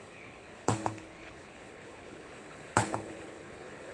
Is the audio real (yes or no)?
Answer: no